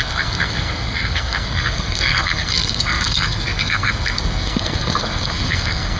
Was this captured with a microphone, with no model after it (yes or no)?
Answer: no